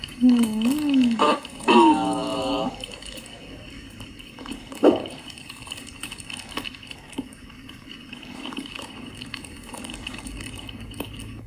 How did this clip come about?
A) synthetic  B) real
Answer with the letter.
A